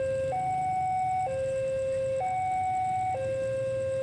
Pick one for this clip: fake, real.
real